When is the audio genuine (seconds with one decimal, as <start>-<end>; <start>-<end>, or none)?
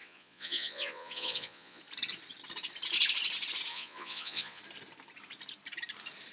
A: 1.8-3.7; 4.6-6.3